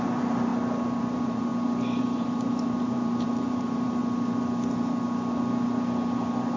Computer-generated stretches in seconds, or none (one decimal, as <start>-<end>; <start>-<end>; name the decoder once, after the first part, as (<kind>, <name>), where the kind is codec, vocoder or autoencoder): 0.0-0.5 (vocoder, BigVGAN v2); 1.0-1.5; 2.0-4.0